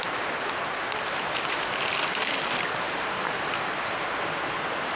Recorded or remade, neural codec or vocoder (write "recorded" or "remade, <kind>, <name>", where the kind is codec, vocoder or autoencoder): recorded